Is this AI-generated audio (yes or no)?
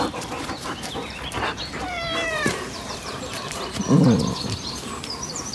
yes